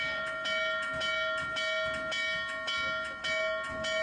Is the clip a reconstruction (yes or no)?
no